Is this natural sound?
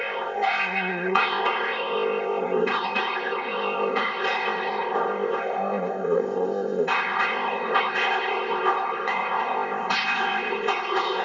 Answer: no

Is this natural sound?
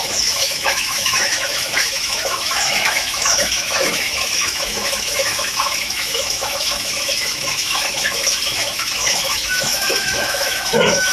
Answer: no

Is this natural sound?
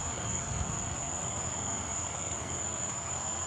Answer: no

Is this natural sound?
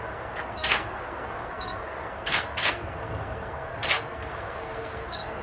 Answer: no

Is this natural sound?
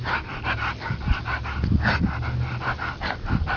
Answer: yes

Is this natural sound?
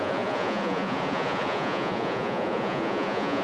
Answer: no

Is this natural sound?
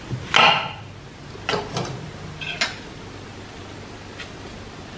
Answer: yes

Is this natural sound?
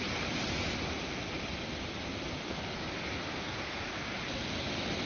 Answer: yes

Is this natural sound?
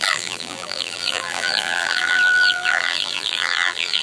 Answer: no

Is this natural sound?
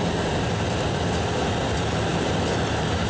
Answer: yes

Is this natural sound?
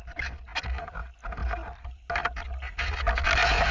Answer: yes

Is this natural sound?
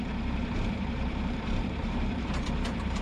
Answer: no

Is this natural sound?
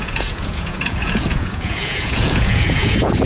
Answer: no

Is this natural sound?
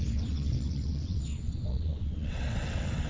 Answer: no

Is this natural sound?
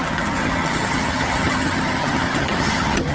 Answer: no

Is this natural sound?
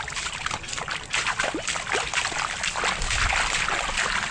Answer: yes